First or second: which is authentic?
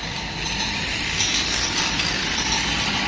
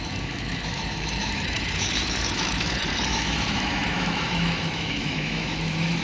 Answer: first